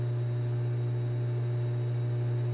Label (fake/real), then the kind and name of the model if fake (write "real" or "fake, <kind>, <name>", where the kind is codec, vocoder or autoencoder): real